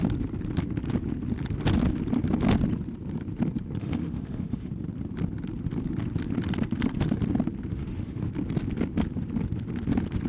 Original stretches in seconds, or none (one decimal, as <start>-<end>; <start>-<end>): 0.0-3.8; 4.7-7.7; 8.3-10.3